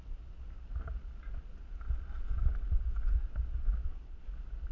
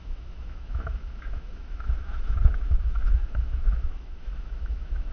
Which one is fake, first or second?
second